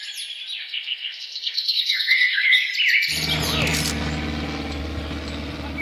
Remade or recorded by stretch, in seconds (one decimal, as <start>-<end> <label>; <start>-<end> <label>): 0.0-0.6 recorded; 0.6-2.7 remade; 2.7-5.8 recorded